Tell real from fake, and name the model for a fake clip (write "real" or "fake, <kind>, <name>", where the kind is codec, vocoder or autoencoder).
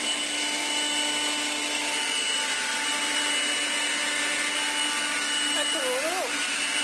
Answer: real